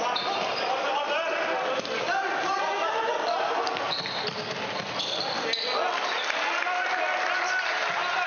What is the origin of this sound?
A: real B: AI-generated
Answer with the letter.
A